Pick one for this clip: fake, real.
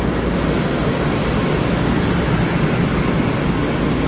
real